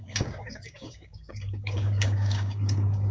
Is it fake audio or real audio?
fake